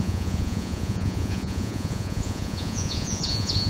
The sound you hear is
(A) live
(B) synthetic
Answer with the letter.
B